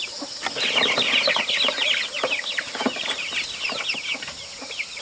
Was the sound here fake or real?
real